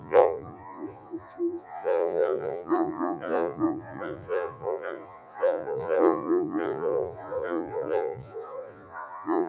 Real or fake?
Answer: fake